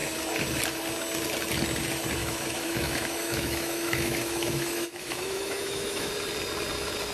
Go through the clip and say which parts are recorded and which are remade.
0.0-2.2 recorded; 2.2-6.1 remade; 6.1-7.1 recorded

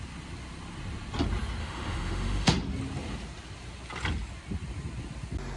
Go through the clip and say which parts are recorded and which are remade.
0.0-1.6 recorded; 1.6-2.5 remade; 2.5-5.6 recorded

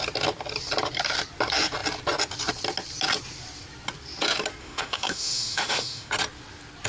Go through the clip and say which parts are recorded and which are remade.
0.0-4.6 recorded; 4.6-6.1 remade; 6.1-6.9 recorded

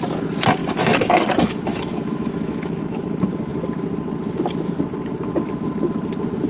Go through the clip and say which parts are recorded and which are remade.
0.0-0.6 recorded; 0.6-2.8 remade; 2.8-6.5 recorded

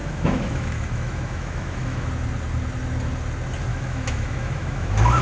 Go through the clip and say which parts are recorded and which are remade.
0.0-2.1 remade; 2.1-3.7 recorded; 3.7-5.2 remade

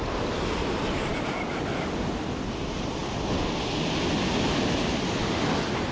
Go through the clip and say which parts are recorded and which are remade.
0.0-5.9 recorded

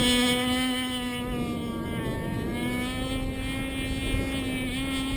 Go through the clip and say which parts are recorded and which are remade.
0.0-5.2 recorded

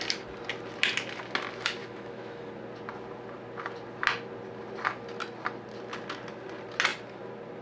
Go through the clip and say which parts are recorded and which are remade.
0.0-1.8 recorded; 1.8-2.5 remade; 2.5-7.6 recorded